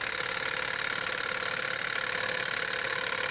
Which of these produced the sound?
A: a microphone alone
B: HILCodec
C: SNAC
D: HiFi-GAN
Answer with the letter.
A